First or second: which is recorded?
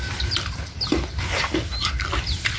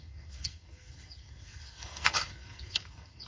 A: first